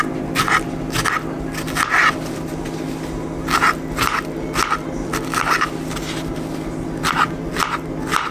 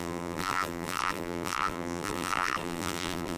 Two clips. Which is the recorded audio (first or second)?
first